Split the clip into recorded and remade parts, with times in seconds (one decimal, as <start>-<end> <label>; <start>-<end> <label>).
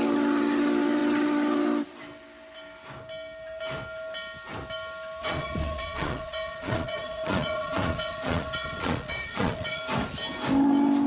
0.0-5.2 recorded; 5.2-9.8 remade; 9.8-11.1 recorded